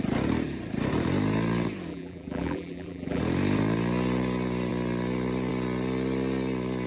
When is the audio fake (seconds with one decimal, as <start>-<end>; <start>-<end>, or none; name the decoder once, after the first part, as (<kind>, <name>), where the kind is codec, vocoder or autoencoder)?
1.9-3.2 (vocoder, BigVGAN v2)